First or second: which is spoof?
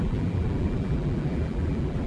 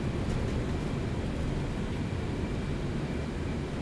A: first